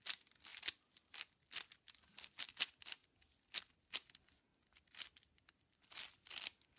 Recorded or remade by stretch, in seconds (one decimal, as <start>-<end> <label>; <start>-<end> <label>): 0.0-6.8 recorded